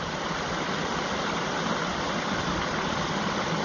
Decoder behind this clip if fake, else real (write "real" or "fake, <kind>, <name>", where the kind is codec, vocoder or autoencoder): real